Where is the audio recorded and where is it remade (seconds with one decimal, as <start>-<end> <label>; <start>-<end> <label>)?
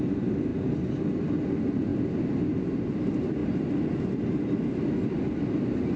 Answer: 0.0-6.0 recorded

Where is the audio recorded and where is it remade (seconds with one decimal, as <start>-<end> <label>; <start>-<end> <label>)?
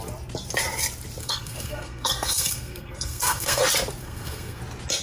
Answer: 0.0-1.2 recorded; 1.2-3.6 remade; 3.6-4.0 recorded; 4.0-4.6 remade; 4.6-5.0 recorded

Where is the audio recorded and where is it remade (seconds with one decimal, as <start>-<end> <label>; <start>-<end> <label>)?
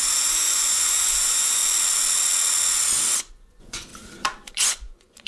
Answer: 0.0-1.6 remade; 1.6-3.3 recorded; 3.3-3.9 remade; 3.9-4.5 recorded; 4.5-5.3 remade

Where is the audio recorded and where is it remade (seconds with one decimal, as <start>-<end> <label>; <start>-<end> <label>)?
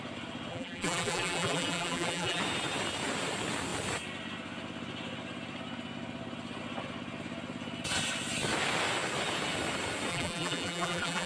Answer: 0.0-0.5 recorded; 0.5-2.4 remade; 2.4-10.1 recorded; 10.1-11.3 remade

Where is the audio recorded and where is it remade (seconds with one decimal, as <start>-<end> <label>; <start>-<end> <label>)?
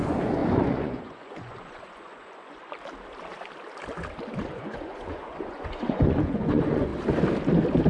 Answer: 0.0-2.6 remade; 2.6-4.5 recorded; 4.5-6.9 remade; 6.9-7.9 recorded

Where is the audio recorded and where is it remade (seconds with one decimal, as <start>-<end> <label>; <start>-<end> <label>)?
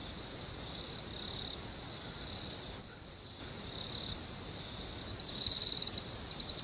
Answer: 0.0-2.8 recorded; 2.8-3.4 remade; 3.4-6.6 recorded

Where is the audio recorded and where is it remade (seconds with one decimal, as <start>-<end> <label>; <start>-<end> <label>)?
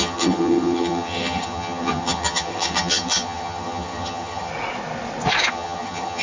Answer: 0.0-4.5 remade; 4.5-5.5 recorded; 5.5-6.2 remade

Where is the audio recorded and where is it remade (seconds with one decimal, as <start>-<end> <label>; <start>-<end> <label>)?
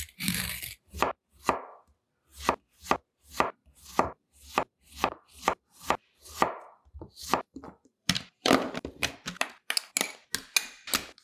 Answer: 0.0-7.9 recorded; 7.9-9.1 remade; 9.1-11.2 recorded